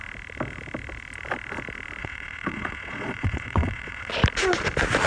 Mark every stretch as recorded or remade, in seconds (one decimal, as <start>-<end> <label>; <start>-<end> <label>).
0.0-2.0 recorded; 2.0-4.1 remade; 4.1-5.1 recorded